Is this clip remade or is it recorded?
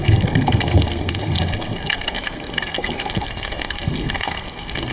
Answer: remade